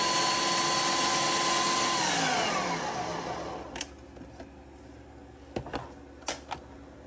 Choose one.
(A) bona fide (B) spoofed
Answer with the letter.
A